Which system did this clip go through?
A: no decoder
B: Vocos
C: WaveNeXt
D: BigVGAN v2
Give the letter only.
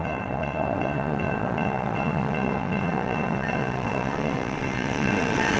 C